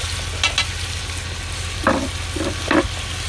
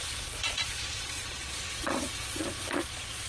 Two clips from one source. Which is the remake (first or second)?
second